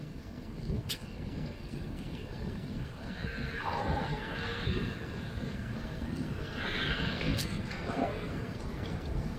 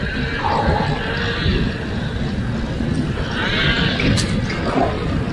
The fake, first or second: first